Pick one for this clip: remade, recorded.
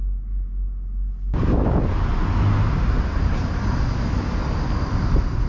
recorded